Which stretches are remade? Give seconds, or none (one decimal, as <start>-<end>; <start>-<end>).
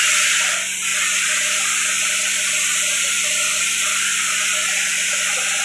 2.7-4.2